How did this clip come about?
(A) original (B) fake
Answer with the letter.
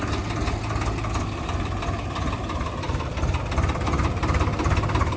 B